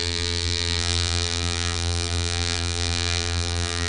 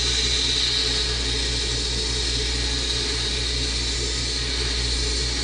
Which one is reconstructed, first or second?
first